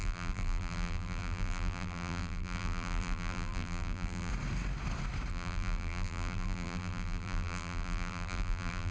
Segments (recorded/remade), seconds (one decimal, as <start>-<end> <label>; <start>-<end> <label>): 0.0-4.3 remade; 4.3-5.3 recorded; 5.3-8.9 remade